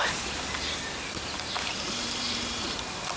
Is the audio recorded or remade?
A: recorded